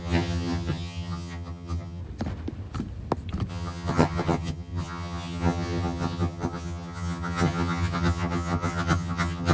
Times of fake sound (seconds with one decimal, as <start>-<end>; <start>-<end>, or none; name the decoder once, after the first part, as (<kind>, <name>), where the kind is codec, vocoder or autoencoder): 0.0-2.0 (vocoder, HiFi-GAN); 3.5-9.5